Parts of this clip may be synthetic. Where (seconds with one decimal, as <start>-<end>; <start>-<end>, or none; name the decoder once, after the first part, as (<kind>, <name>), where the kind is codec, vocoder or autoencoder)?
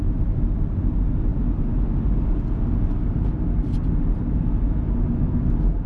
none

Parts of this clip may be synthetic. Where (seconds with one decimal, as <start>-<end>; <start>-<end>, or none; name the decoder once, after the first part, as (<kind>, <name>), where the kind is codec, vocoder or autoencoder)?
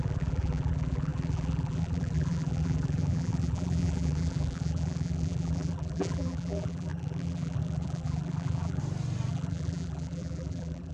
0.0-8.8 (vocoder, BigVGAN v2); 9.3-10.9